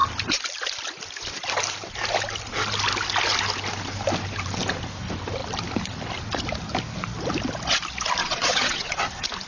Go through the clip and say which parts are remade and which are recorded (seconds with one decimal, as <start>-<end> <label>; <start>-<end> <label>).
0.0-8.2 recorded; 8.2-9.0 remade; 9.0-9.5 recorded